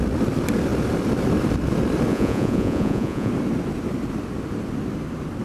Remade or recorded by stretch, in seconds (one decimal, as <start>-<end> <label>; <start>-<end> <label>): 0.0-2.1 recorded; 2.1-3.3 remade; 3.3-5.4 recorded